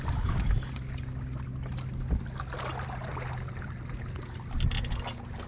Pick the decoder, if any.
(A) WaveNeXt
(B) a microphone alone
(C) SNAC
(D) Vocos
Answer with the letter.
B